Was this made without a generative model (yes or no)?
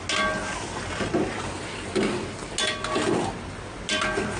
yes